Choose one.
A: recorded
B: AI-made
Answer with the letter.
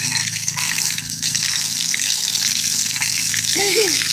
B